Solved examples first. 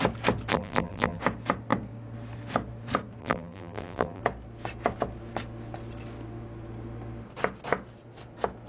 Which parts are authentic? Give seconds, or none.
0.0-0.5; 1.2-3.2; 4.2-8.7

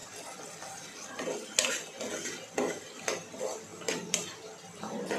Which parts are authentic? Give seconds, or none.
0.0-5.2

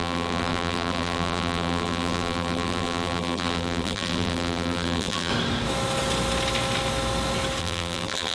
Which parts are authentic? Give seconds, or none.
5.3-7.6

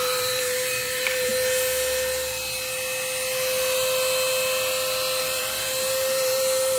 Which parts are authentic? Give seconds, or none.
1.3-5.2

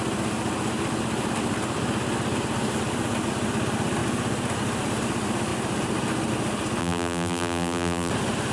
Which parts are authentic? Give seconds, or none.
0.0-6.8; 8.1-8.5

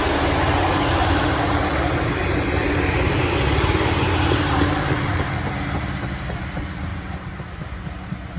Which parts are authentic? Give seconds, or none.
0.0-1.0; 5.4-6.9; 7.6-8.4